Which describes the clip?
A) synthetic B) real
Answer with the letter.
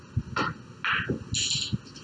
B